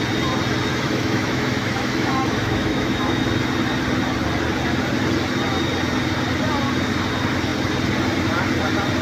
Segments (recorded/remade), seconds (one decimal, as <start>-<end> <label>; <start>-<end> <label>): 0.0-0.7 recorded; 0.7-3.2 remade; 3.2-9.0 recorded